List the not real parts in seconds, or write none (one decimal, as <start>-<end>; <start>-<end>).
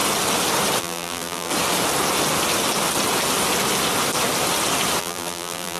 0.8-1.5; 5.0-5.8